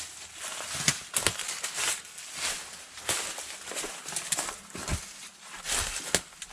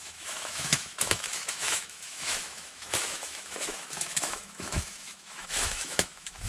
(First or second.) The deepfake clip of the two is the second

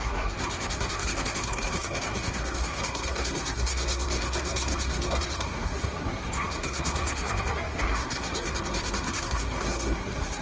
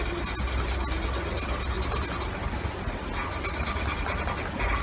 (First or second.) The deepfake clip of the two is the first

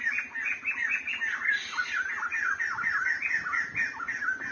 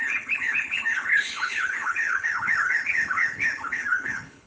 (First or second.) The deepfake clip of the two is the second